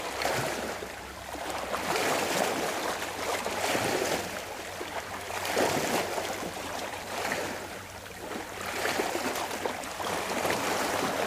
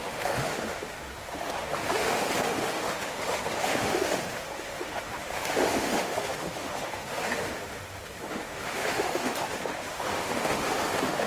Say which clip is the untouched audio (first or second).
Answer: first